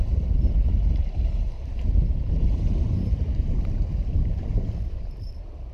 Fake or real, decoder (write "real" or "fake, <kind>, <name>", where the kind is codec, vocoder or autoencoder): fake, vocoder, BigVGAN v2